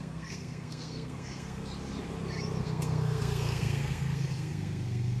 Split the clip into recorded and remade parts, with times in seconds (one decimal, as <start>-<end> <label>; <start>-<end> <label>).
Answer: 0.0-1.7 remade; 1.7-2.6 recorded; 2.6-5.2 remade